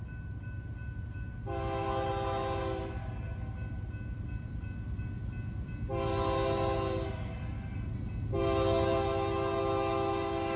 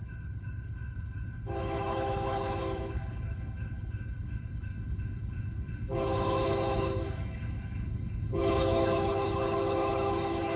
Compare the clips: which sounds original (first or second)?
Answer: first